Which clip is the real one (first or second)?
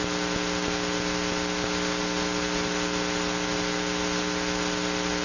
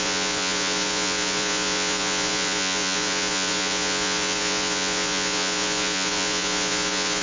first